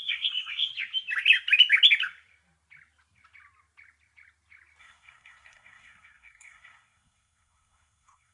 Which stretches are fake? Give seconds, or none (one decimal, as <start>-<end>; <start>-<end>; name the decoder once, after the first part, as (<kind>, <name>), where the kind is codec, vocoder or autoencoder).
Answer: 0.0-0.7 (codec, SNAC); 4.8-8.3